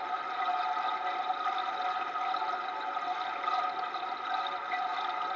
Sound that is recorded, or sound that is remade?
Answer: recorded